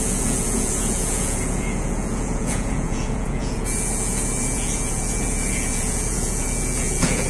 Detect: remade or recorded remade